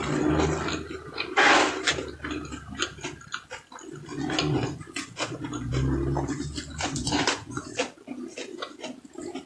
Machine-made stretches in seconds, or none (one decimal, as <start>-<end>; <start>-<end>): 4.1-5.7; 6.7-7.7